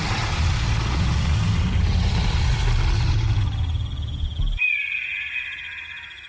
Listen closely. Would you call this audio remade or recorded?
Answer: recorded